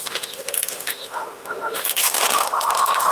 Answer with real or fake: fake